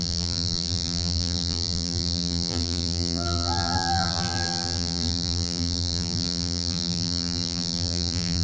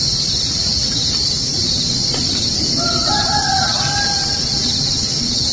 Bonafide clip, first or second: second